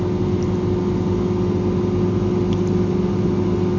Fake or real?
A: real